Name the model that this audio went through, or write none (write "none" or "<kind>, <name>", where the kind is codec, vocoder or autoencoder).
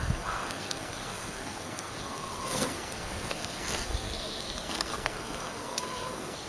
codec, SNAC